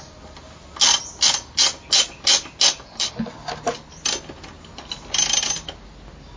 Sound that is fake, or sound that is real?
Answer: real